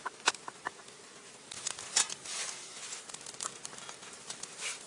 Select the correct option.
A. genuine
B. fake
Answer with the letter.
A